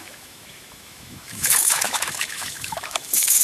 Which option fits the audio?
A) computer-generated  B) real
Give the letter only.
A